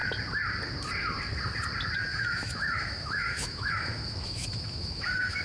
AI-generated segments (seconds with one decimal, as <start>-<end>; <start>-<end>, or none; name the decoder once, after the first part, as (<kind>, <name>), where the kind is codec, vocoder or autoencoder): 2.1-5.4 (autoencoder, DAC-VAE)